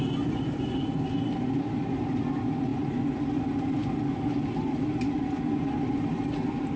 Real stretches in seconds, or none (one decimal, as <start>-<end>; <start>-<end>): 0.0-6.8